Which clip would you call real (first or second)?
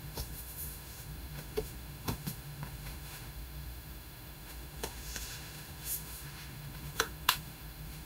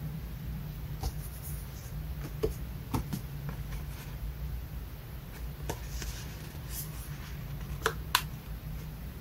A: second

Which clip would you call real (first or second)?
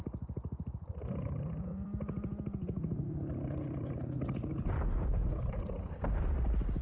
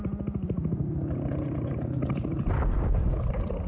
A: first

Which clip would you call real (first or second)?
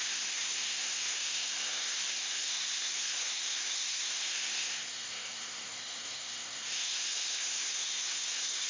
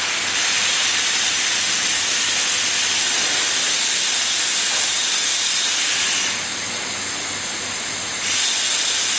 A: second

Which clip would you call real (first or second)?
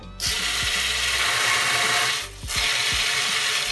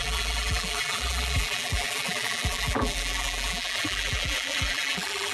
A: first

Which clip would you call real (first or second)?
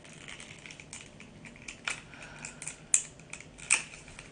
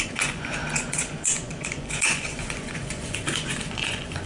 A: first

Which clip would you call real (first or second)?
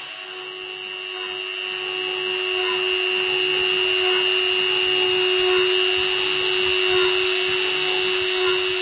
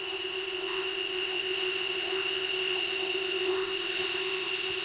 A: first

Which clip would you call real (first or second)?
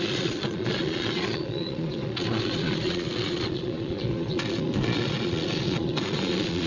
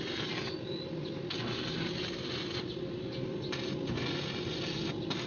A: second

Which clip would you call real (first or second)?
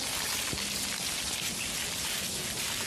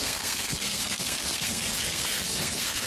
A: first